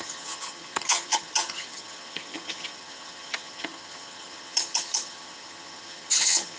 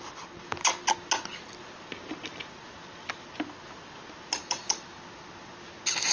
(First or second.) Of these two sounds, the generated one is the first